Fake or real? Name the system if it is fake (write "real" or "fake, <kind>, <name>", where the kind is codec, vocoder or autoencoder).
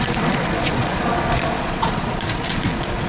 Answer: fake, vocoder, Vocos